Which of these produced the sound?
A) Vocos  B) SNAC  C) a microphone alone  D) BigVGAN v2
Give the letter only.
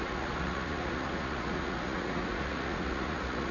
A